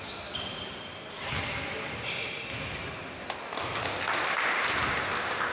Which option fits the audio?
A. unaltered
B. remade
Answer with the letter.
A